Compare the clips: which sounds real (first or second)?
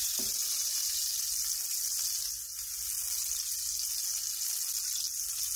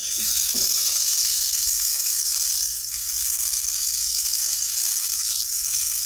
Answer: first